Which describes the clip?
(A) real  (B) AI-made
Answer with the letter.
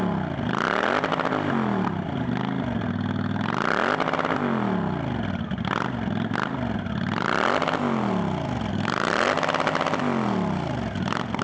A